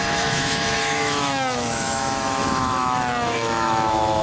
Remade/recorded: remade